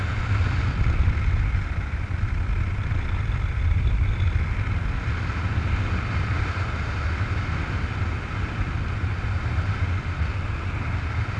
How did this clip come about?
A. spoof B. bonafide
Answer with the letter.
B